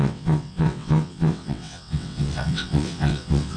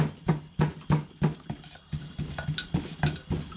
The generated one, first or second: first